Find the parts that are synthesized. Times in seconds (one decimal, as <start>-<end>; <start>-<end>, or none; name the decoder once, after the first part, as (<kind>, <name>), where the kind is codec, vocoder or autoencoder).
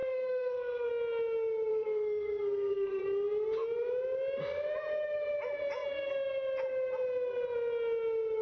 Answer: 0.0-0.9 (codec, SNAC); 1.7-3.0